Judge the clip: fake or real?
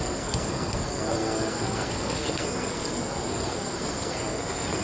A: fake